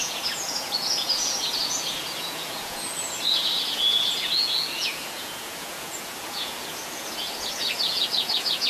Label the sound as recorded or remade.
remade